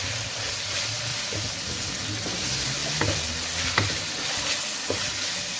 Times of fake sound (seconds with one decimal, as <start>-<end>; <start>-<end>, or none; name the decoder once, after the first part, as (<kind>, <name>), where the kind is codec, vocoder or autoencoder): 1.1-1.7 (vocoder, BigVGAN v2)